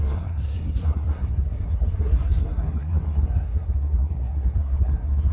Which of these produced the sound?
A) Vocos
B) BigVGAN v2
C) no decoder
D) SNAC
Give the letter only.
D